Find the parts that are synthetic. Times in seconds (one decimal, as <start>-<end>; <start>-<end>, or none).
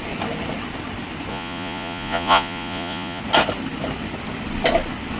1.3-3.2